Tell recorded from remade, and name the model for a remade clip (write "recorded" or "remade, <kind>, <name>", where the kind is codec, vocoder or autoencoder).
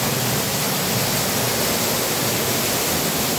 recorded